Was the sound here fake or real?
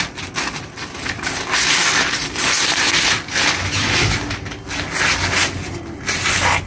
real